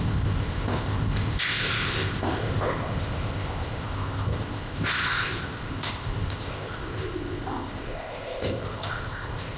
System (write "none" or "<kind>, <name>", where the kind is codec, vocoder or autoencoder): codec, ZipCodec